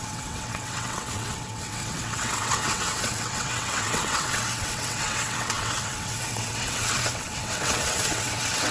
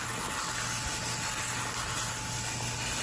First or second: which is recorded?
second